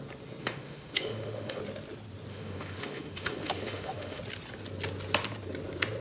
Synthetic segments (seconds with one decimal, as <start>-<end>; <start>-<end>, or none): 0.4-1.6; 2.3-4.2